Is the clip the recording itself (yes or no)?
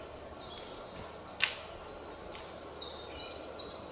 yes